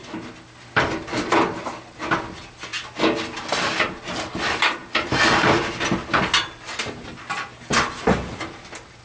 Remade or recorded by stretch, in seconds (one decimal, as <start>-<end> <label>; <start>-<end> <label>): 0.0-9.0 recorded